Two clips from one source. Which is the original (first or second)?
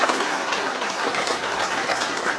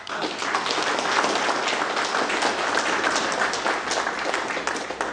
second